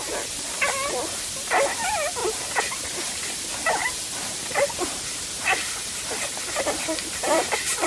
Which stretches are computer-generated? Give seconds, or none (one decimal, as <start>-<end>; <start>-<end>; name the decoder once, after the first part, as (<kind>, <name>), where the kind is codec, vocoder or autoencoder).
2.2-3.4 (vocoder, BigVGAN v2); 4.4-7.5